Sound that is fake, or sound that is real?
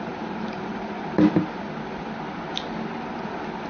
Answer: real